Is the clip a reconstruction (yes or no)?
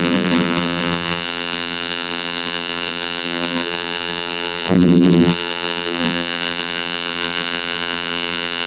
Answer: yes